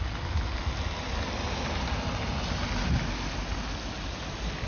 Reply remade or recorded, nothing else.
recorded